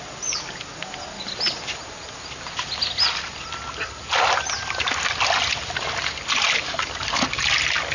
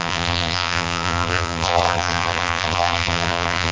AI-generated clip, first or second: second